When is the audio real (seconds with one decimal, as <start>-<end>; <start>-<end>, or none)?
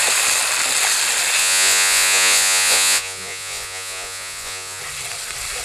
0.0-1.4; 4.8-5.6